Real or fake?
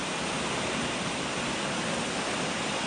real